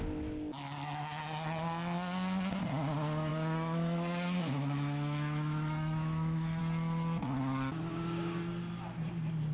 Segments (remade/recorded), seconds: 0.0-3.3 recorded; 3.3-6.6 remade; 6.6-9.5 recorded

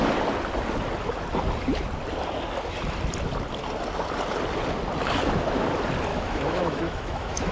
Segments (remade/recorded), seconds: 0.0-6.1 recorded; 6.1-7.5 remade